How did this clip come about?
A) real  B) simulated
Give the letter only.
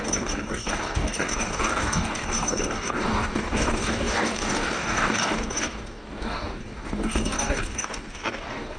B